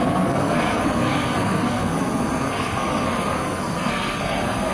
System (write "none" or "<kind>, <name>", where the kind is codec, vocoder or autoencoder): codec, SNAC